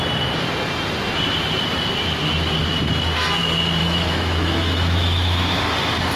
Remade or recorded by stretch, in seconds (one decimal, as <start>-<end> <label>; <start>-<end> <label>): 0.0-3.8 recorded; 3.8-5.6 remade; 5.6-6.2 recorded